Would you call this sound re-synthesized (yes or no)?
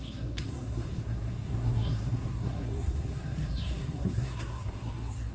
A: yes